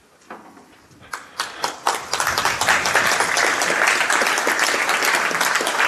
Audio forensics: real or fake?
real